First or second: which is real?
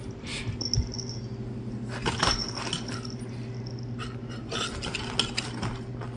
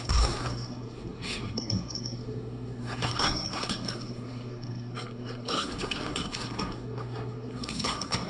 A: first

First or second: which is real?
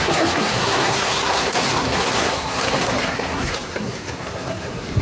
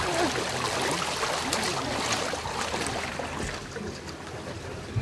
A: second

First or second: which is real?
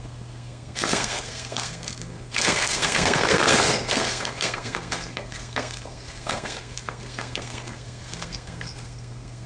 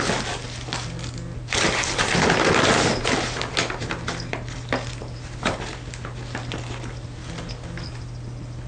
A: second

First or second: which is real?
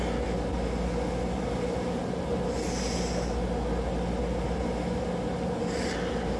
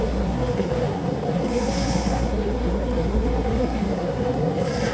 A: first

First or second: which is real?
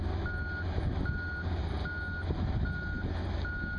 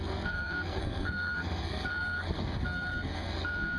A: first